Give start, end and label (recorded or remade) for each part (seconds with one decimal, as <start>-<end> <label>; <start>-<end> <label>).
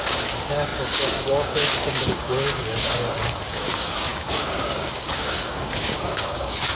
0.0-6.7 remade